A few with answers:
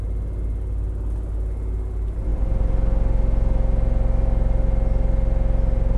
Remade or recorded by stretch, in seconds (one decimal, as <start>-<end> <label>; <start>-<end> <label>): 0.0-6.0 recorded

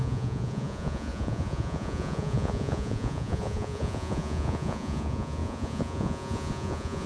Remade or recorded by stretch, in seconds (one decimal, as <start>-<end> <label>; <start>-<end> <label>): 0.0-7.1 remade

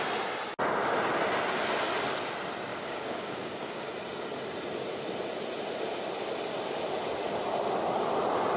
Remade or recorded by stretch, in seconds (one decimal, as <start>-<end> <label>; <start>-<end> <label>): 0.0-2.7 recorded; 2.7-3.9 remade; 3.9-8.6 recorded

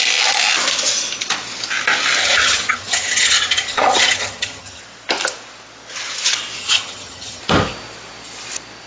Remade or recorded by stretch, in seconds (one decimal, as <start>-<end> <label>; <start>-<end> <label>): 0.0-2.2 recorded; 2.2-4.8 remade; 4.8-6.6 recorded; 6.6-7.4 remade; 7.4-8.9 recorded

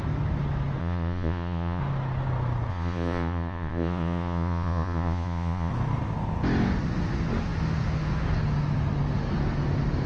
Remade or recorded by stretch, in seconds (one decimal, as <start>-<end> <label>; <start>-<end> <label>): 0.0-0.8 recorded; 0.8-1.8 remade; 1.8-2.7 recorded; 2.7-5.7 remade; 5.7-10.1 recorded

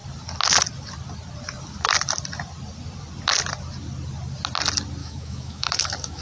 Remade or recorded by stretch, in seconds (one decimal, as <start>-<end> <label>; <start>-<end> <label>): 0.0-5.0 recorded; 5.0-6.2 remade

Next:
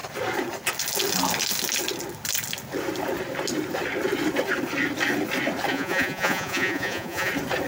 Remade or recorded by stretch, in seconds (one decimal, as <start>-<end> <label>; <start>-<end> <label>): 0.0-5.7 recorded; 5.7-7.3 remade; 7.3-7.7 recorded